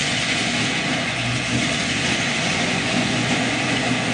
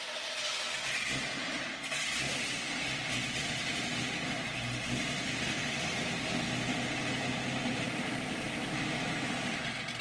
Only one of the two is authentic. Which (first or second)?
second